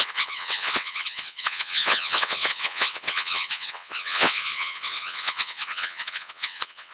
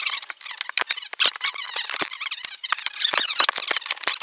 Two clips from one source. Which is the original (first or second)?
second